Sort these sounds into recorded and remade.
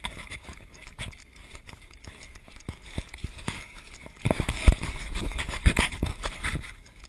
remade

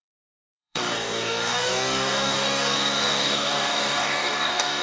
remade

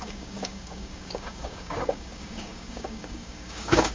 remade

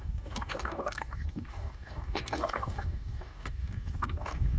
remade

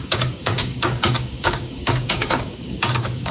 remade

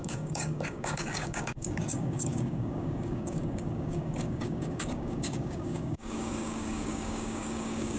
remade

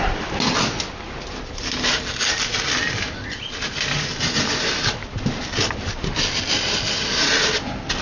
recorded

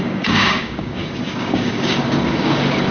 remade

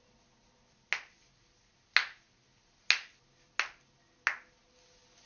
recorded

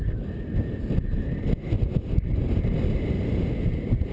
recorded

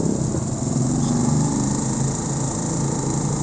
recorded